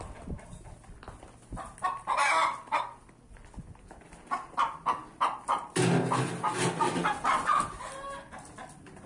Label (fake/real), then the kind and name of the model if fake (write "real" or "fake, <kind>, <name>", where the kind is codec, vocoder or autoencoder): real